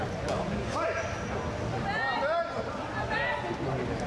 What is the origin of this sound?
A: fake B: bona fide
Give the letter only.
B